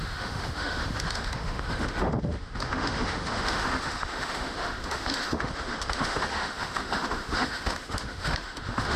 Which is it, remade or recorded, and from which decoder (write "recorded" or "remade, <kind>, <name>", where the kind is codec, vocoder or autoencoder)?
remade, autoencoder, DAC-VAE